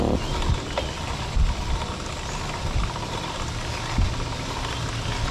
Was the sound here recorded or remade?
recorded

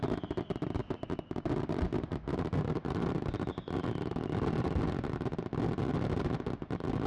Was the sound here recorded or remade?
recorded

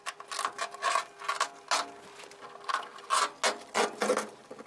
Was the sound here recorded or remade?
recorded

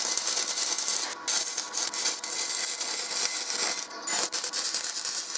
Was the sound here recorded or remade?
recorded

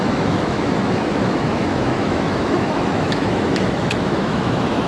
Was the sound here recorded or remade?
remade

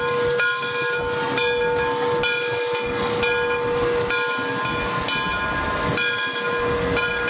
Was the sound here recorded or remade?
recorded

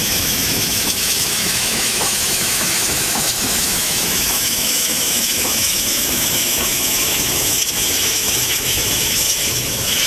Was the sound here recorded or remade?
remade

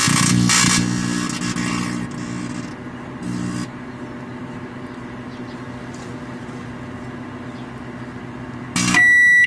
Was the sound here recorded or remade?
recorded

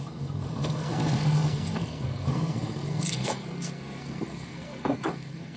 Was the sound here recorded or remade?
remade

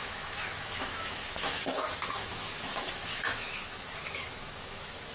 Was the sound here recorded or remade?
remade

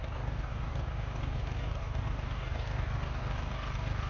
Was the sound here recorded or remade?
remade